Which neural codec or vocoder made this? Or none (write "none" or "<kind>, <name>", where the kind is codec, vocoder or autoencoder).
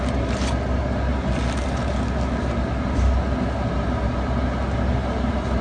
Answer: none